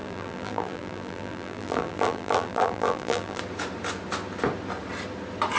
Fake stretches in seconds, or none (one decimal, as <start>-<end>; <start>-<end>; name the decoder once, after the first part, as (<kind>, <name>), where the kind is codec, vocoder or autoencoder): 0.0-3.4 (vocoder, BigVGAN v2)